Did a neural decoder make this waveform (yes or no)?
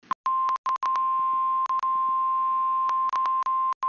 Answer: no